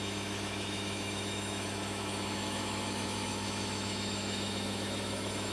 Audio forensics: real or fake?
fake